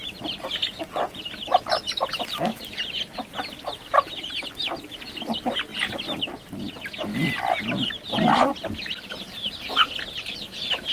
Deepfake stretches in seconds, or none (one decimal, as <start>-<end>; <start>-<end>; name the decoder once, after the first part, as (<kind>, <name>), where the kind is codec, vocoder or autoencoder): none